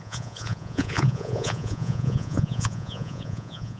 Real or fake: fake